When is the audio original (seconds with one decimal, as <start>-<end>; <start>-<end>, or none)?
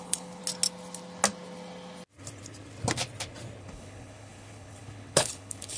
0.4-3.6